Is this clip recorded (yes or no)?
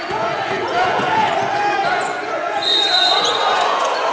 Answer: no